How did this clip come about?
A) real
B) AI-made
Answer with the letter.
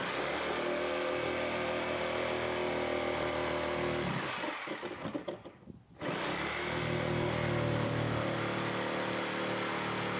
A